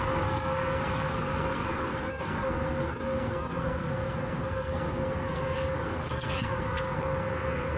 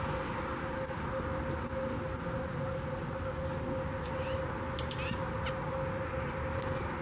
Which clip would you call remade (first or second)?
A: first